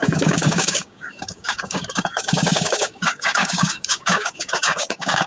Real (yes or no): no